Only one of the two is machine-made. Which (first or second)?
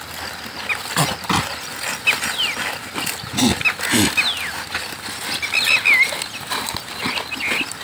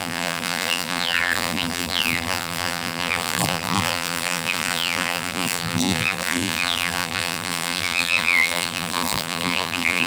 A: second